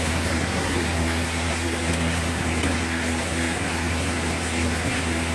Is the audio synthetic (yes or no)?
yes